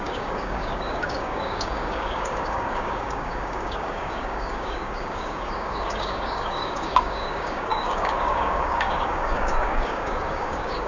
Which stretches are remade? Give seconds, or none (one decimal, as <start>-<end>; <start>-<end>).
0.0-10.9